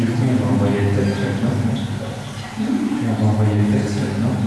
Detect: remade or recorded recorded